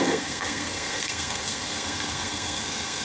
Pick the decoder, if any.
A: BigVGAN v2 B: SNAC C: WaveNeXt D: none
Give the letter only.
B